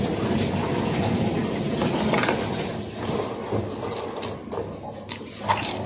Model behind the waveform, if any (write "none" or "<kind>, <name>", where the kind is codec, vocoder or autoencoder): none